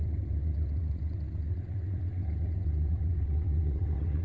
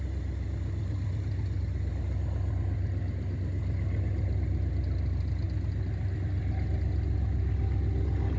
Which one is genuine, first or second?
second